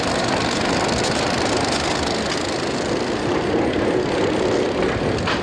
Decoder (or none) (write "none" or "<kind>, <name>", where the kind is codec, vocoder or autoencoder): none